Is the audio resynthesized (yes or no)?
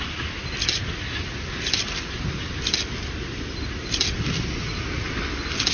no